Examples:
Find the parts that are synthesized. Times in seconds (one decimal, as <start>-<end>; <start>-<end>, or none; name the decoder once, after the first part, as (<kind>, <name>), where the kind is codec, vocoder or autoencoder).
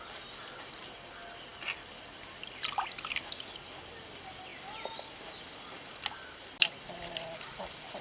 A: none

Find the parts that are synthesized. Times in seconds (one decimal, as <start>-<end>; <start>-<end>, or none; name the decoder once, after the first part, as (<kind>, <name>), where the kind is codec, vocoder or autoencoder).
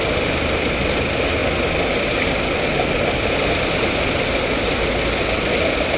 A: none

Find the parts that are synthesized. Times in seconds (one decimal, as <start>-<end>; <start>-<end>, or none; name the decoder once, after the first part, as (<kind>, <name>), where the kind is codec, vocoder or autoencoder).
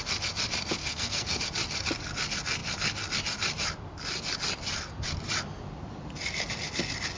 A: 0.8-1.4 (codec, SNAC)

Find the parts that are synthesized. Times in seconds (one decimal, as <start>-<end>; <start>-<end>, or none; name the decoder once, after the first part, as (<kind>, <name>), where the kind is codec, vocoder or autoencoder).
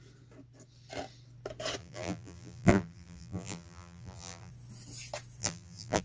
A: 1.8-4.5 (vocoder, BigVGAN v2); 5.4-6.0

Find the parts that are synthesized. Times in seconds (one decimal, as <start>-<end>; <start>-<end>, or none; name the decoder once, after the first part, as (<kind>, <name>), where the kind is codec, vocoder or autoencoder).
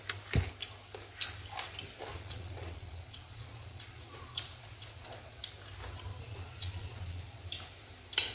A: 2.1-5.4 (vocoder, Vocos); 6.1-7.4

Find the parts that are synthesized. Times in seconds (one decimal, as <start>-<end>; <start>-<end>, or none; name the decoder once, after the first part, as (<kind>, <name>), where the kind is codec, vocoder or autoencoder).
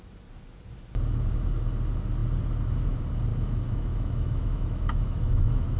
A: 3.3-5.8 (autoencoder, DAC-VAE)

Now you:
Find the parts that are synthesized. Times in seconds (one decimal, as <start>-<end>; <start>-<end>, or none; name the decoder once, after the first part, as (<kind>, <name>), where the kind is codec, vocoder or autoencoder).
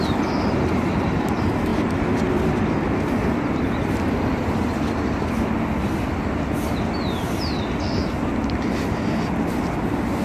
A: none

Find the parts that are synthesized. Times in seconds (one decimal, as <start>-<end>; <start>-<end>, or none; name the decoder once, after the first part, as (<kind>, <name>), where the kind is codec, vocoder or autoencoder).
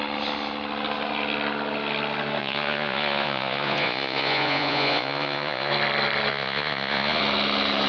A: 2.4-5.7 (vocoder, Vocos); 6.3-7.2